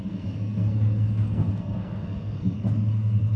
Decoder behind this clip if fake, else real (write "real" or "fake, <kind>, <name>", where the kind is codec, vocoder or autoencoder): fake, codec, SNAC